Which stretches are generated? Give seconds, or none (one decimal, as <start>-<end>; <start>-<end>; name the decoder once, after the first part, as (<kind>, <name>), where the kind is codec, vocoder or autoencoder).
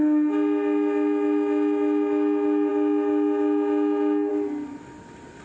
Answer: none